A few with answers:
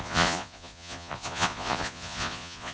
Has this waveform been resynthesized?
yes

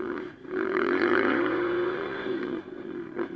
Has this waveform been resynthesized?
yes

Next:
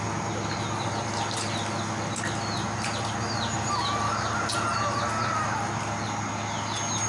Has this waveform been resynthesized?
no